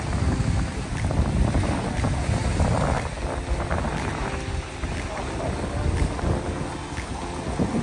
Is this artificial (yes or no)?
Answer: no